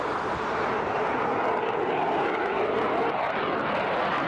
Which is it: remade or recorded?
recorded